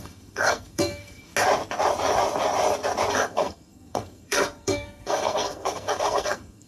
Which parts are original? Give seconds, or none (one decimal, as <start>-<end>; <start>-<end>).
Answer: 1.3-3.1